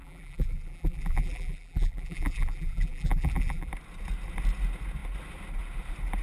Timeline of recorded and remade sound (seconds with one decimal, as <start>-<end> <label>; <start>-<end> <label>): 0.0-3.7 remade; 3.7-6.2 recorded